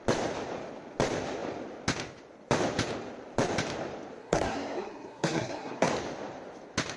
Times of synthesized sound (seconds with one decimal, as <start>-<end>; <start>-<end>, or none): 4.2-5.9